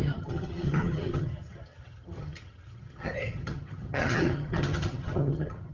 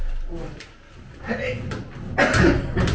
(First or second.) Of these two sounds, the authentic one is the second